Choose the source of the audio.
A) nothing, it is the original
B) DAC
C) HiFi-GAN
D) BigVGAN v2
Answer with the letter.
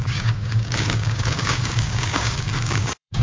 B